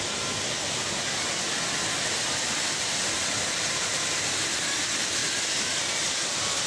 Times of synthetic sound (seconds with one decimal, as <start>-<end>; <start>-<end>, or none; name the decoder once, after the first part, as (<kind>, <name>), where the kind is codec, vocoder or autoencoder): none